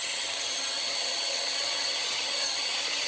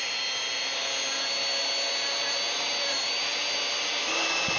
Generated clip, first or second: first